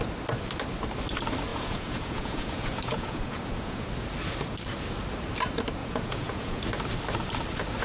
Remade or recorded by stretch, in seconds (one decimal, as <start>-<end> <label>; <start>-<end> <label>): 0.0-1.5 recorded; 1.5-3.9 remade; 3.9-5.8 recorded; 5.8-6.6 remade; 6.6-7.8 recorded